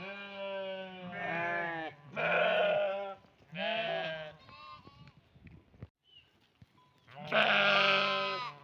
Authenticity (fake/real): real